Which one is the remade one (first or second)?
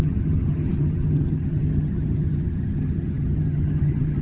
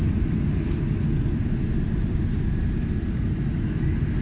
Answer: first